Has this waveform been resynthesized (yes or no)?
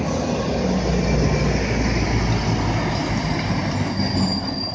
no